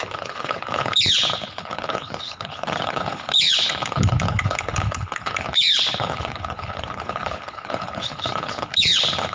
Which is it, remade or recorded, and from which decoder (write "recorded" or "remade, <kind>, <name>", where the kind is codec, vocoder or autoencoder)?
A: remade, codec, HILCodec